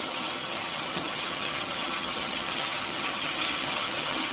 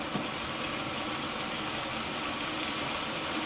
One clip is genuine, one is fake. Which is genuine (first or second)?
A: second